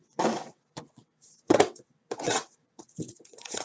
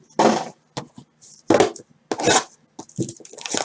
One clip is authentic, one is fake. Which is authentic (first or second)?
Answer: second